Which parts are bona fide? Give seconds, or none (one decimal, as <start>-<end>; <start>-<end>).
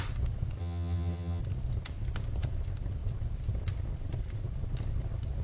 0.0-0.6; 1.4-5.4